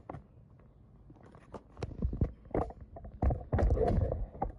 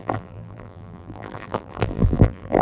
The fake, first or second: second